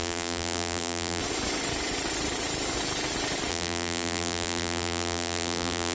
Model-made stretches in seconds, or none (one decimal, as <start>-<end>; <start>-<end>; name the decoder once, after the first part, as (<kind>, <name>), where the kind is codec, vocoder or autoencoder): 0.0-1.2 (vocoder, BigVGAN v2); 3.5-5.9